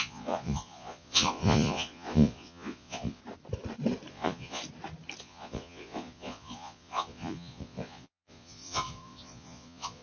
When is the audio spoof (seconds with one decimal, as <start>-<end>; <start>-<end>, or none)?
0.0-3.2; 4.1-4.6; 5.2-10.0